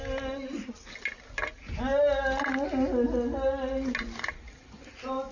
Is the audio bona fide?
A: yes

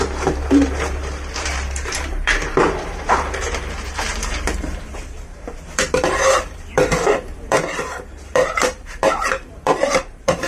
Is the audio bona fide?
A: no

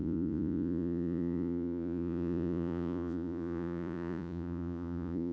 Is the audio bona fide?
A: no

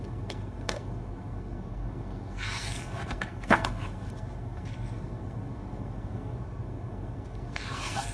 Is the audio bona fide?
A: no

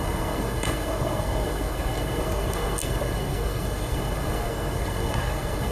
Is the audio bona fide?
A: no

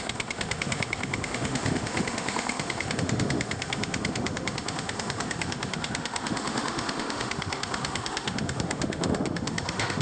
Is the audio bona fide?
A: no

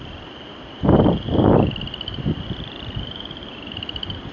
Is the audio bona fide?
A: no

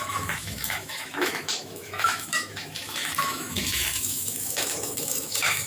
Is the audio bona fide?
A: no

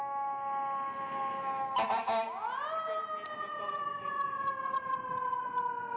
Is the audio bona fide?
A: yes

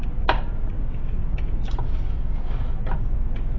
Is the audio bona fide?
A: yes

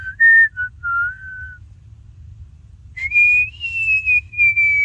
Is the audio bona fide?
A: yes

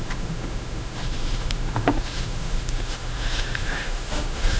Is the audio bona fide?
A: no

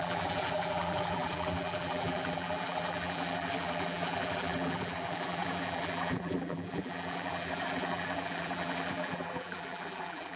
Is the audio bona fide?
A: no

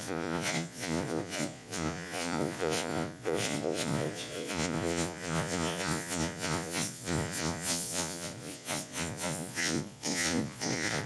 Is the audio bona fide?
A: no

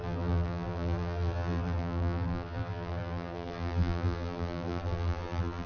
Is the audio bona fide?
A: no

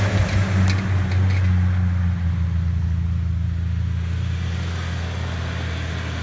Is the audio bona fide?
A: yes